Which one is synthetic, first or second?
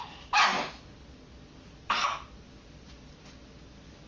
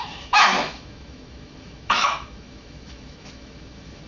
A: second